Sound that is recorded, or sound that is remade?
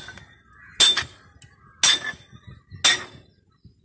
recorded